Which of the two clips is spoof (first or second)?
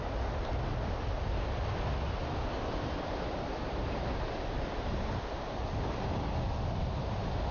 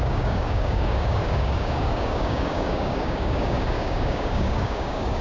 second